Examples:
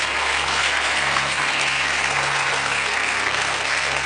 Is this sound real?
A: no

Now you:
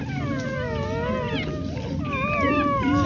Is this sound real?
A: yes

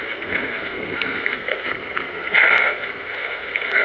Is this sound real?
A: no